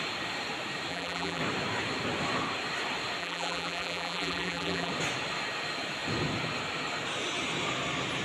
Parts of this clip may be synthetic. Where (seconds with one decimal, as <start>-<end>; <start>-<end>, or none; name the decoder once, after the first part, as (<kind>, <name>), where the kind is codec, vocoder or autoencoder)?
0.9-1.4 (vocoder, BigVGAN v2); 3.2-4.9